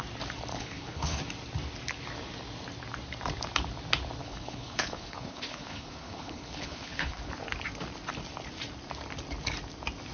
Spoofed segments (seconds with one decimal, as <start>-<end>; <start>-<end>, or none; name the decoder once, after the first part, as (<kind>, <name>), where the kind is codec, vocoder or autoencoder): 0.5-1.2 (codec, HILCodec); 4.2-7.3